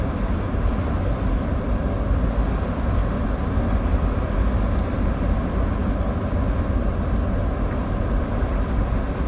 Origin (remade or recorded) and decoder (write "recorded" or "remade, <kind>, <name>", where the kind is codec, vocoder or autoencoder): recorded